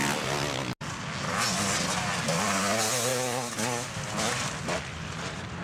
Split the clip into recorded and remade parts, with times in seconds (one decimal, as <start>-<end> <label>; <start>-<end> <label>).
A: 0.0-5.6 recorded